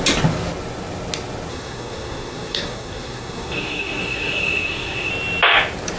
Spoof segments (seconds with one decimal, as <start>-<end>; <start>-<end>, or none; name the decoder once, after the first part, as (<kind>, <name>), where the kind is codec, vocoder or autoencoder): 1.5-5.1 (codec, SNAC)

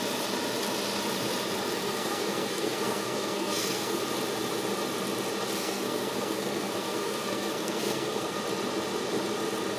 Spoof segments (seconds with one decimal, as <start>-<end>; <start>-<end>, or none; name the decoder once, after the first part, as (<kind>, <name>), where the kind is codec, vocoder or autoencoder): 1.8-4.0 (codec, SNAC); 5.6-8.4

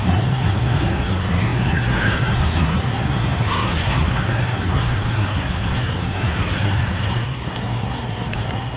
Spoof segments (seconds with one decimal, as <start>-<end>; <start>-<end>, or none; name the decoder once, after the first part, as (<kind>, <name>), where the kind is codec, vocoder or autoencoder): 0.0-8.8 (codec, SNAC)

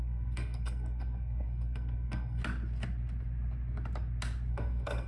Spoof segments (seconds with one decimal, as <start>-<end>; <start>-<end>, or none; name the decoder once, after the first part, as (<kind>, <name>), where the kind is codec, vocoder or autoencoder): 0.0-2.4 (codec, SNAC); 4.5-5.1

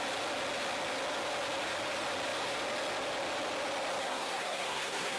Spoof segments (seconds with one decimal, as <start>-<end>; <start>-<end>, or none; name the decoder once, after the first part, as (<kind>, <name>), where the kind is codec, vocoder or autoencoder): 4.0-5.2 (codec, SNAC)

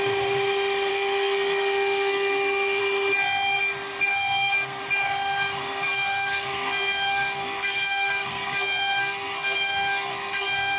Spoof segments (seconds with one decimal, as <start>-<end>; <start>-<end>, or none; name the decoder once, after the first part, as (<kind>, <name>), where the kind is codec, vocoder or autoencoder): 0.9-2.8 (codec, SNAC); 4.1-4.8; 5.6-10.8

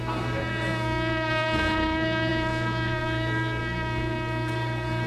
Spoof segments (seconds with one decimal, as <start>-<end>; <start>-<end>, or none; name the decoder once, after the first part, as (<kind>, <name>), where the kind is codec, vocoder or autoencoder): 0.0-5.1 (codec, SNAC)